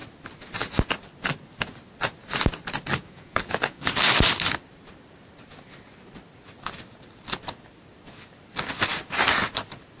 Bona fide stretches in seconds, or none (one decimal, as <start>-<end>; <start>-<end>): 0.0-2.9; 4.0-10.0